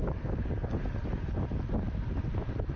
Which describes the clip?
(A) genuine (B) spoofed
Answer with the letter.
A